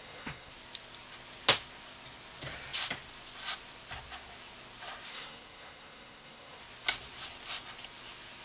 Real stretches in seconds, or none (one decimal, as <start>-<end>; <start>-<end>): 0.5-5.1; 6.6-8.4